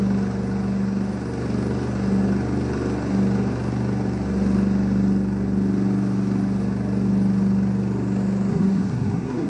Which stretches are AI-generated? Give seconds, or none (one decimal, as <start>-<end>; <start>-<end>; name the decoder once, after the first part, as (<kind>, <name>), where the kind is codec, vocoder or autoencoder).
8.5-9.5 (codec, SNAC)